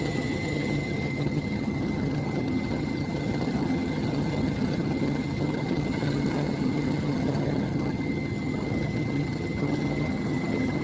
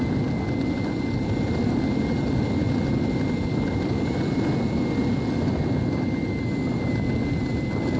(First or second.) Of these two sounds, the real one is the second